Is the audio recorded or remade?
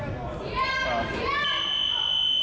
recorded